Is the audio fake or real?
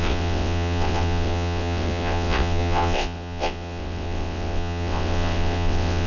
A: fake